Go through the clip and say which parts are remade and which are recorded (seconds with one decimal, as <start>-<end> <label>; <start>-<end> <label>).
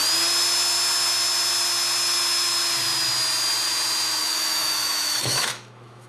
0.0-4.2 recorded; 4.2-6.1 remade